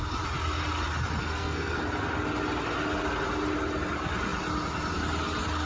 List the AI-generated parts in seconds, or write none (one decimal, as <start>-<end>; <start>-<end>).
1.2-1.8